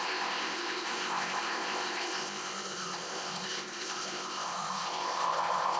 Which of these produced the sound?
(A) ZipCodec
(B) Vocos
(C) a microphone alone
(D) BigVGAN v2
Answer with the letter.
A